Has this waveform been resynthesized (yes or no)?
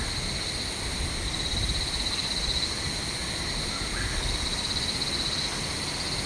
no